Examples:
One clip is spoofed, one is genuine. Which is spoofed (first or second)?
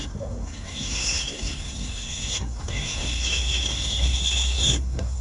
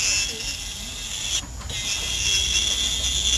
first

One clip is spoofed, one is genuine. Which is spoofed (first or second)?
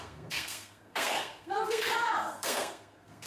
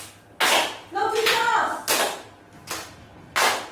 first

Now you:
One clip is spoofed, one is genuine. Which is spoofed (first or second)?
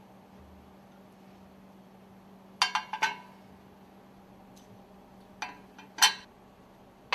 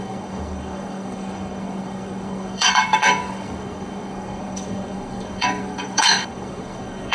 second